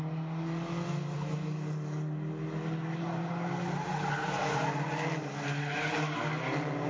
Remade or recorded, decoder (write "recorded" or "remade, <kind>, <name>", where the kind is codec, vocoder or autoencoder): recorded